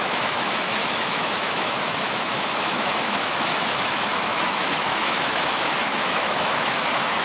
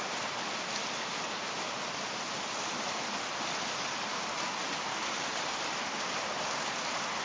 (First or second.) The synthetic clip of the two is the first